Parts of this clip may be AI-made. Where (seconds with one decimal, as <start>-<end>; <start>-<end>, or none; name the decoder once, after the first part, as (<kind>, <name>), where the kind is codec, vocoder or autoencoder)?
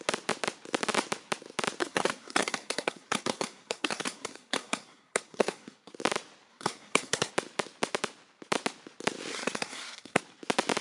1.8-5.9 (codec, SNAC); 6.5-7.3; 9.3-10.2